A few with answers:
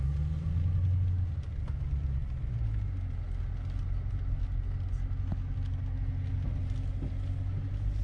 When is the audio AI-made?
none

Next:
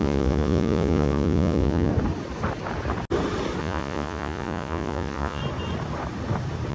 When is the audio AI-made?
0.0-1.9 (vocoder, Vocos); 3.6-5.4

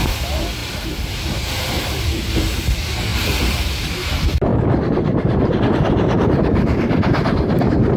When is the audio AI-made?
none

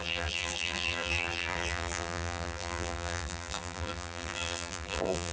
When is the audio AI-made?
0.0-5.3 (vocoder, BigVGAN v2)